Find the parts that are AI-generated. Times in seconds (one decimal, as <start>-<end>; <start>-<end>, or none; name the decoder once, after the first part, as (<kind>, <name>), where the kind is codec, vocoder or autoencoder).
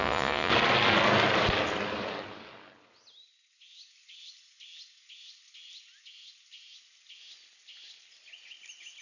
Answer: 0.0-0.5 (vocoder, Vocos)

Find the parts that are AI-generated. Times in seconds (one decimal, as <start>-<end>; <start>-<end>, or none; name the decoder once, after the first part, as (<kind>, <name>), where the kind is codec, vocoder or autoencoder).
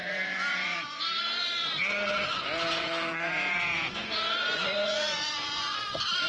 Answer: 0.0-6.3 (vocoder, Vocos)